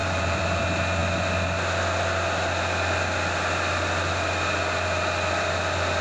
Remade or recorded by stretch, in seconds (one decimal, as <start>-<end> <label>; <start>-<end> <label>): 0.0-0.6 remade; 0.6-6.0 recorded